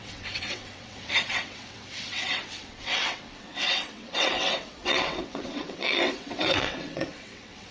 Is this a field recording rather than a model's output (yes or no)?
no